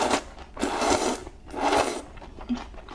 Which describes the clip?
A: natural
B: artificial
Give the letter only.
A